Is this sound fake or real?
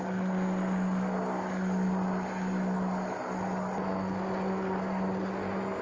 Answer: real